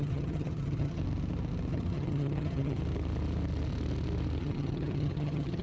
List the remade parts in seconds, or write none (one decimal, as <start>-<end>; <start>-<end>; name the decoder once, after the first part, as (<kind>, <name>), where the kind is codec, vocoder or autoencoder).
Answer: 0.0-1.0 (vocoder, HiFi-GAN); 1.7-2.8; 4.4-5.6